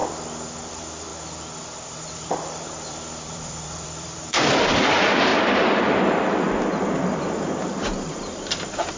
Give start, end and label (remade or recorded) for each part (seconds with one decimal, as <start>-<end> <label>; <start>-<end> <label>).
0.0-0.7 recorded; 0.7-1.1 remade; 1.1-2.1 recorded; 2.1-5.3 remade; 5.3-8.6 recorded; 8.6-9.0 remade